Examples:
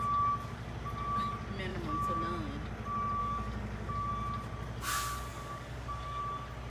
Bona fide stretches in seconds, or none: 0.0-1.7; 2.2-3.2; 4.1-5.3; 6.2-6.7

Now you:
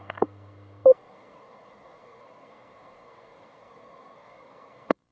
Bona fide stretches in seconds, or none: none

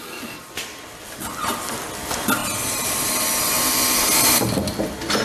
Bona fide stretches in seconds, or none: 0.0-2.4; 2.9-5.2

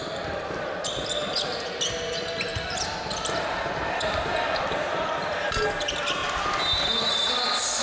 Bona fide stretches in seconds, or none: 0.0-2.5; 4.7-6.2; 7.1-7.8

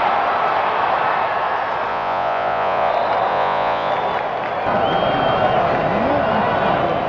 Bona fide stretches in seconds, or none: 0.0-1.9; 2.9-3.3; 3.9-7.1

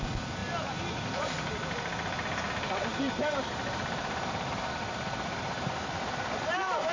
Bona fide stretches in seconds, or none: 0.0-2.9; 5.7-6.9

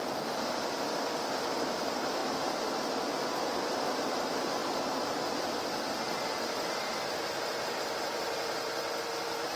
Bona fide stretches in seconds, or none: 0.0-9.6

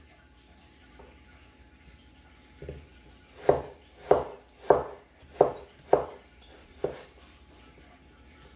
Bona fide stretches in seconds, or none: 0.0-8.6